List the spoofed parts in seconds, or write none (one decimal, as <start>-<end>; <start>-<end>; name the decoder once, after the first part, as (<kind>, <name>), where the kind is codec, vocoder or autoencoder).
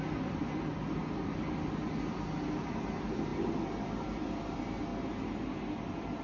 0.0-1.0 (vocoder, BigVGAN v2); 2.6-3.3; 3.8-4.9; 5.8-6.2